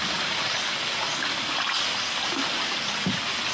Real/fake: real